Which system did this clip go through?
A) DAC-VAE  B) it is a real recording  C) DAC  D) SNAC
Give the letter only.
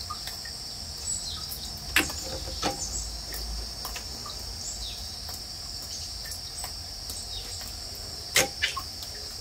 B